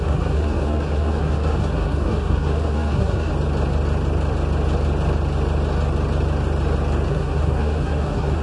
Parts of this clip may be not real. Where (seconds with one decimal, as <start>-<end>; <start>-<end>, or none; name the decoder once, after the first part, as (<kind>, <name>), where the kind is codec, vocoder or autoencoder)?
0.0-3.3 (codec, SNAC); 7.1-8.4